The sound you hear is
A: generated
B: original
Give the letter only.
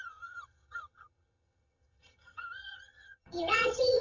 A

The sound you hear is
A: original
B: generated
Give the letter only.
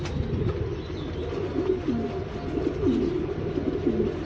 A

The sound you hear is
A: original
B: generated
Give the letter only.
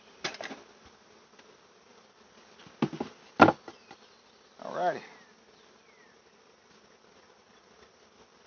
A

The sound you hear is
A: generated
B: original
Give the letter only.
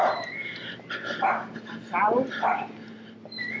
B